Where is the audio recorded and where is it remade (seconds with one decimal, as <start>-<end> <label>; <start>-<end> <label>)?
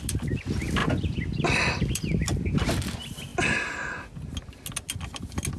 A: 0.0-5.6 recorded